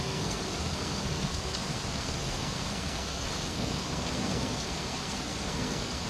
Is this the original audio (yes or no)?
no